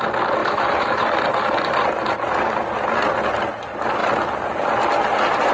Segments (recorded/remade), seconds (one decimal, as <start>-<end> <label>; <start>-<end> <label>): 0.0-0.4 recorded; 0.4-1.0 remade; 1.0-5.5 recorded